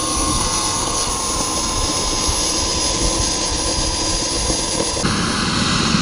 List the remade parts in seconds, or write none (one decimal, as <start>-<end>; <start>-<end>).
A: 0.0-1.1